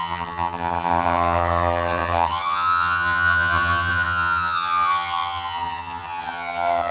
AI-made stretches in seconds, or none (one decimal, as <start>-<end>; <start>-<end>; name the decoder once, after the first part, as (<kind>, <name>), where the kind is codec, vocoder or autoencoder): 0.0-6.9 (vocoder, HiFi-GAN)